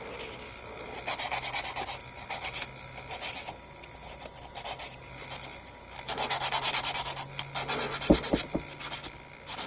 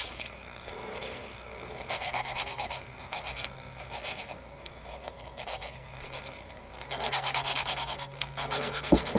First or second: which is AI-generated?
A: second